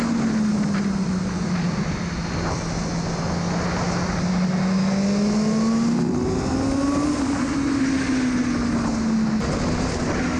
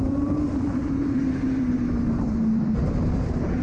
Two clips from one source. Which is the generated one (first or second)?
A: second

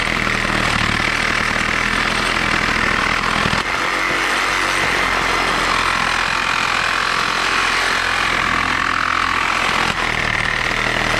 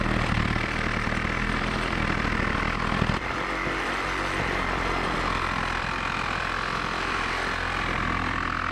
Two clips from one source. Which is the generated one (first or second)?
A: second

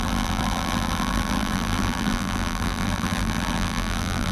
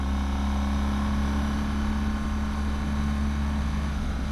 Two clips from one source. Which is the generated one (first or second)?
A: first